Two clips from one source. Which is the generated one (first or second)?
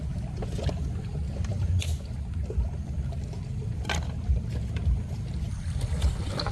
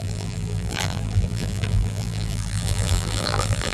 second